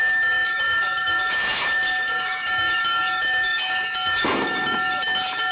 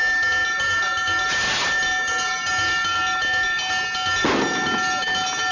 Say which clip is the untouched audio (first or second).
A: second